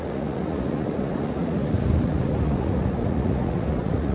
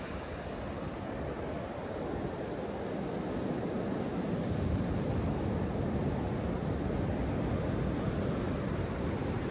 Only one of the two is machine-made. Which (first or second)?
first